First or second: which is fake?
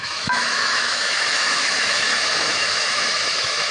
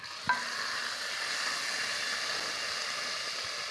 first